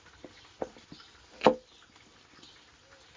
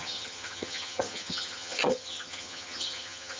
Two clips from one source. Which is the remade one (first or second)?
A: second